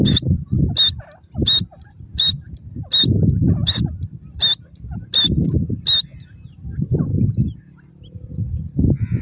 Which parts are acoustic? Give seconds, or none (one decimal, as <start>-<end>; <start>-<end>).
0.0-9.2